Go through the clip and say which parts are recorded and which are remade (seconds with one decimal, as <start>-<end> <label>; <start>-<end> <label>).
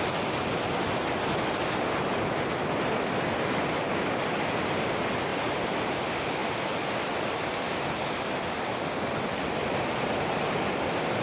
0.0-5.3 recorded; 5.3-6.0 remade; 6.0-9.6 recorded; 9.6-10.6 remade; 10.6-11.2 recorded